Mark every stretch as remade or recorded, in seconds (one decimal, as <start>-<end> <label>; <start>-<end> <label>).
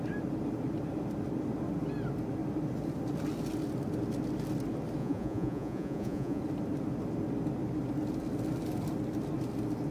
0.0-5.0 recorded; 5.0-6.4 remade; 6.4-9.9 recorded